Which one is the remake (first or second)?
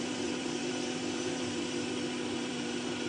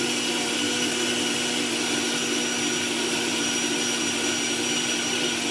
first